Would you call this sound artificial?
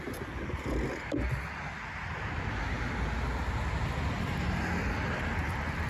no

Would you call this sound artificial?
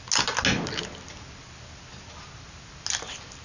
no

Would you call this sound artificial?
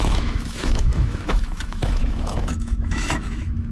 yes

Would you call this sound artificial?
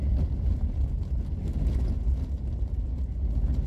no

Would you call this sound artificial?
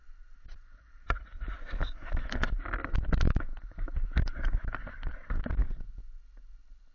no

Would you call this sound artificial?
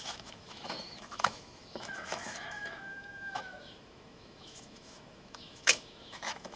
yes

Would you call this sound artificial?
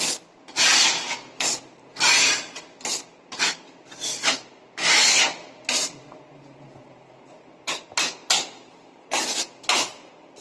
no